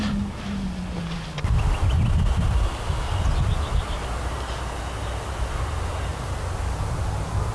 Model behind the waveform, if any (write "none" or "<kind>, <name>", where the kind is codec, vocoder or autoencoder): none